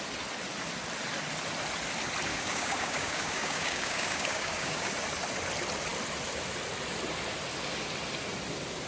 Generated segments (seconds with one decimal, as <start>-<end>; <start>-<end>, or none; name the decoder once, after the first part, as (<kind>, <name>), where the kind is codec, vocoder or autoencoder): 2.3-4.9 (codec, DAC)